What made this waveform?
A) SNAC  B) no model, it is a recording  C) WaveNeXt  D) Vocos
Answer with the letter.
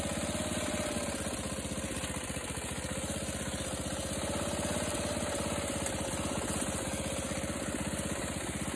B